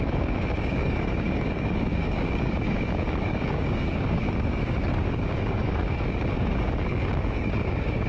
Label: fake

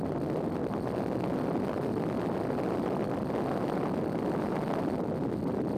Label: real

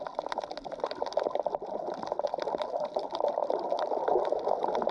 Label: real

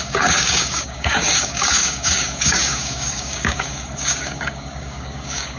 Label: fake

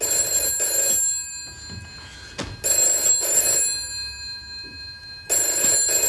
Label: real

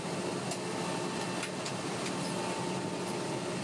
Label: real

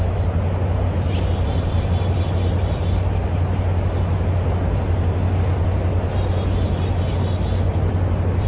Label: real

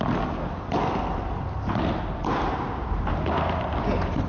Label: real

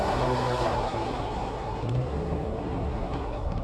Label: fake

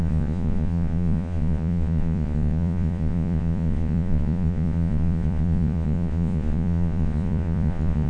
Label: fake